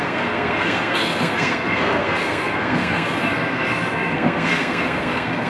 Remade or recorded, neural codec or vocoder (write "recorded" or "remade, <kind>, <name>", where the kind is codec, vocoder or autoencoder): remade, codec, SNAC